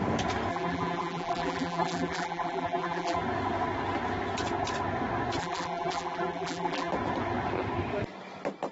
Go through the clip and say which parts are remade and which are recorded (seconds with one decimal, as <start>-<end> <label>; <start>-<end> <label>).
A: 0.0-0.5 recorded; 0.5-3.2 remade; 3.2-5.4 recorded; 5.4-6.9 remade; 6.9-8.7 recorded